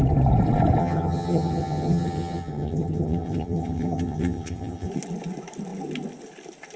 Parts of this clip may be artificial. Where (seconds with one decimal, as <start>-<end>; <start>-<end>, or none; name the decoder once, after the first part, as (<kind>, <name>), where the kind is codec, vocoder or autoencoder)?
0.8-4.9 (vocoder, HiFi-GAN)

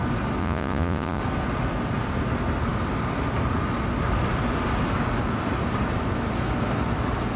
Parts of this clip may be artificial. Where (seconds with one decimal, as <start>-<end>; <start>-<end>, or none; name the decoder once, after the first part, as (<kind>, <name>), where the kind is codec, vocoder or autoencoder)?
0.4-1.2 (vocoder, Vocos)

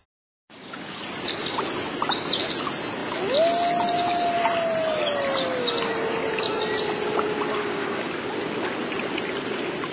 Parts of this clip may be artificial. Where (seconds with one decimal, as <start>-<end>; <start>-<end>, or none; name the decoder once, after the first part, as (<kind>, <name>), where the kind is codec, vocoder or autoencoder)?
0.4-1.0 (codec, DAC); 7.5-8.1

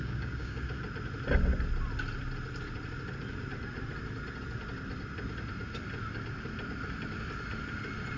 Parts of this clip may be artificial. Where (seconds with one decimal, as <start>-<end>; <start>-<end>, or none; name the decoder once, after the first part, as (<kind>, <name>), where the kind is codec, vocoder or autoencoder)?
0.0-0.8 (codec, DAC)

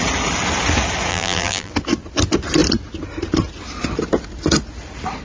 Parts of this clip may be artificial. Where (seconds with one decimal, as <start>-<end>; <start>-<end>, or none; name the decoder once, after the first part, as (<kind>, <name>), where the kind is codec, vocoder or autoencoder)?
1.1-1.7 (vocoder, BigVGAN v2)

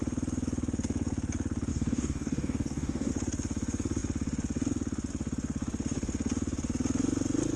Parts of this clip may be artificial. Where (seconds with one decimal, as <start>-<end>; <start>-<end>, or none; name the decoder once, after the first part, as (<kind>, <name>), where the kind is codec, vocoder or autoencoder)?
1.7-3.1 (codec, DAC)

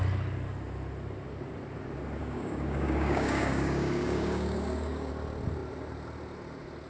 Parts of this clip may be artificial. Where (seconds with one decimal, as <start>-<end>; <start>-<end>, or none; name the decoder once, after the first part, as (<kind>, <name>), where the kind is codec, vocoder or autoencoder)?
2.2-5.1 (codec, DAC)

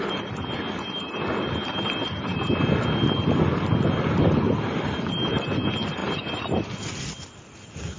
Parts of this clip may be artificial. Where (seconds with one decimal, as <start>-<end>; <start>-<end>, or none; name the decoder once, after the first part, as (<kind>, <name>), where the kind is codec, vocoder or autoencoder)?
none